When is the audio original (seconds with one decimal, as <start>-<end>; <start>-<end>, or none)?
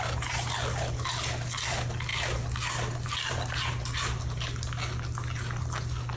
0.0-6.2